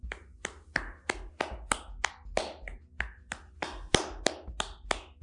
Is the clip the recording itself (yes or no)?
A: yes